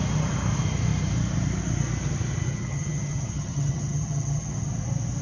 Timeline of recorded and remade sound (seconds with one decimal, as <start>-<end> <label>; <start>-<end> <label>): 0.0-2.5 recorded; 2.5-4.7 remade; 4.7-5.2 recorded